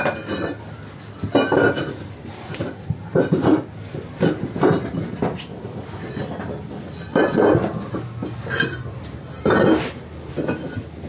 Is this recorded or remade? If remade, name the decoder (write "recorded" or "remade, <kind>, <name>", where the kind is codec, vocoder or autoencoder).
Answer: recorded